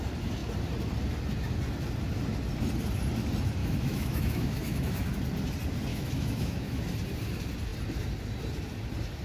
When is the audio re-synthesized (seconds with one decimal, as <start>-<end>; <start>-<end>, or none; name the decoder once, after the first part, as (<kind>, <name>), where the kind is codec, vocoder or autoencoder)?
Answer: 3.6-5.2 (autoencoder, DAC-VAE); 5.9-6.8